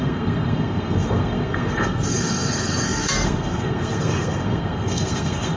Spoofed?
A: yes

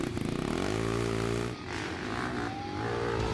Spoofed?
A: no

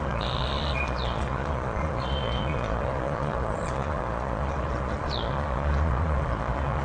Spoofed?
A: yes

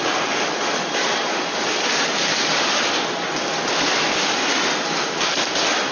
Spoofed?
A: no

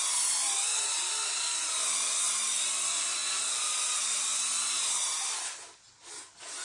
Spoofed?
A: no